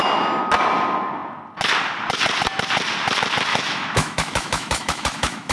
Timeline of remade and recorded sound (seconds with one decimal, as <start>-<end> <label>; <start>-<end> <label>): 0.0-3.5 recorded; 3.5-5.5 remade